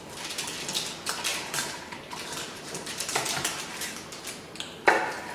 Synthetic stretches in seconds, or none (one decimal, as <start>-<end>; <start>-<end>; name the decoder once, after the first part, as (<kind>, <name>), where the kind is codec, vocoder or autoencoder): 1.3-4.0 (vocoder, BigVGAN v2)